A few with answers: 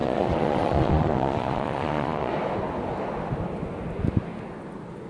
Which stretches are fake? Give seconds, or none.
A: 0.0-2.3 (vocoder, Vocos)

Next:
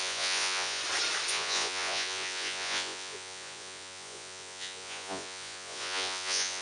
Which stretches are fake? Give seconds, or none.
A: 0.0-0.8 (vocoder, Vocos); 1.3-6.6